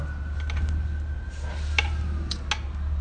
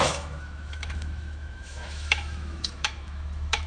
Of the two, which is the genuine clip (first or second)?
first